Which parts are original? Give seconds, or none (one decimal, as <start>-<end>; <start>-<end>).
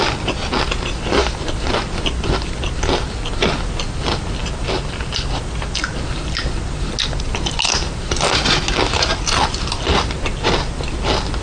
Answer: 0.0-11.4